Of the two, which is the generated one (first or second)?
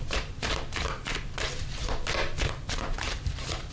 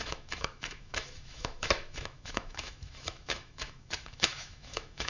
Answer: second